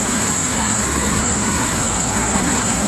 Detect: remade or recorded remade